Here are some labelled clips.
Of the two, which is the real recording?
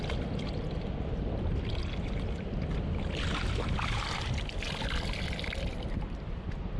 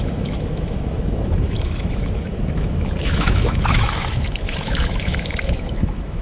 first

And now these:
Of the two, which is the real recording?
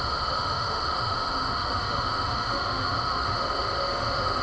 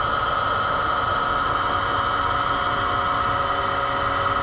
second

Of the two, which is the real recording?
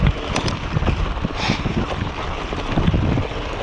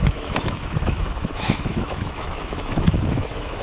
first